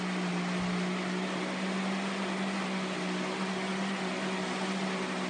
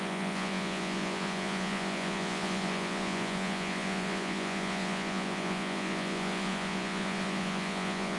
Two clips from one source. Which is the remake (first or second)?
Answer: second